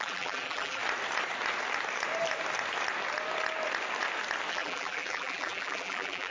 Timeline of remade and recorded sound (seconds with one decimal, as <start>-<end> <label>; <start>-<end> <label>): 0.0-0.8 remade; 0.8-4.5 recorded; 4.5-6.3 remade